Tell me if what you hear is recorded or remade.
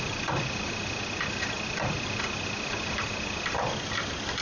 recorded